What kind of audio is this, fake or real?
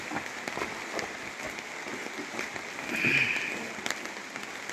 real